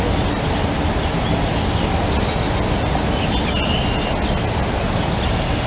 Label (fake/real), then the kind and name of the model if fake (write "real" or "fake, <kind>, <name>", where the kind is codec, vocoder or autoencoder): real